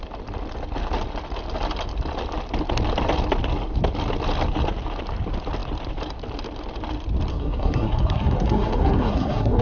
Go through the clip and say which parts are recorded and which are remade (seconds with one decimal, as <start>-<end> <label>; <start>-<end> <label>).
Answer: 0.0-7.3 recorded; 7.3-9.6 remade

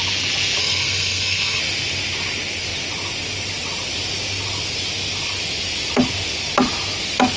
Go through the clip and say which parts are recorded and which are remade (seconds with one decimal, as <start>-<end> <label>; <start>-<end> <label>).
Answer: 0.0-0.6 recorded; 0.6-1.6 remade; 1.6-7.4 recorded

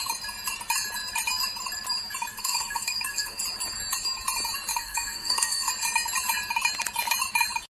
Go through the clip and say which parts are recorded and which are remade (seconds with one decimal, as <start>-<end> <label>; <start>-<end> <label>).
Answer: 0.0-2.3 recorded; 2.3-3.4 remade; 3.4-4.7 recorded; 4.7-5.7 remade; 5.7-7.7 recorded